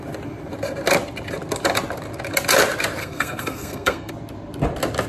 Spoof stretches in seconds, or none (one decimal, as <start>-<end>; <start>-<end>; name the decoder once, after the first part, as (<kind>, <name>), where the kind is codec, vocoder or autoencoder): 3.0-4.1 (codec, SNAC)